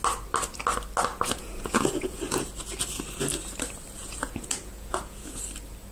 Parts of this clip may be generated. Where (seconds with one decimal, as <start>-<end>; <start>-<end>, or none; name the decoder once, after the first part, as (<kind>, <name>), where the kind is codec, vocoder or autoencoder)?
1.1-2.4 (vocoder, Vocos); 4.0-5.4